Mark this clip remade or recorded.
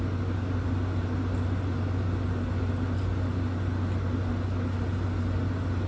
recorded